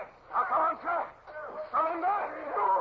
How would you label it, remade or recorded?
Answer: recorded